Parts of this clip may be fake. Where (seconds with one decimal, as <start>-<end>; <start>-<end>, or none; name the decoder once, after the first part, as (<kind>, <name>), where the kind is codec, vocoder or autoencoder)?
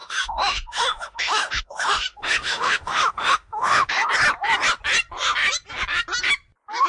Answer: 0.0-4.1 (autoencoder, DAC-VAE)